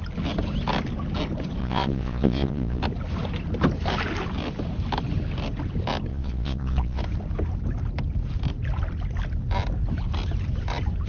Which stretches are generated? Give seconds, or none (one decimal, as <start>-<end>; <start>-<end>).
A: 1.6-2.8; 6.1-7.0